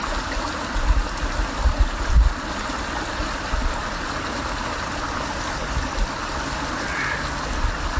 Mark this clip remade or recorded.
recorded